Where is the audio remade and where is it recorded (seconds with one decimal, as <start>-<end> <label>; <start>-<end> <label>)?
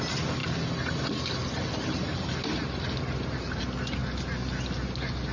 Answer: 0.0-5.3 recorded